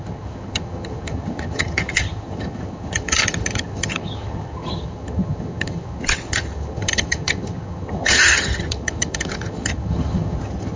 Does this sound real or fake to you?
fake